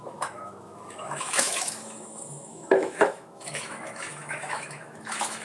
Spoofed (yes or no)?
yes